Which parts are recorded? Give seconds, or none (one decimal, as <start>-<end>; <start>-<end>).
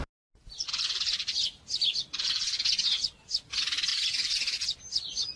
0.0-0.4; 2.6-3.9; 4.8-5.4